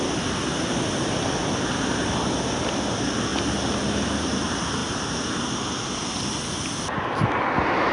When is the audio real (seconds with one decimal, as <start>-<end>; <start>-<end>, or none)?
0.0-7.9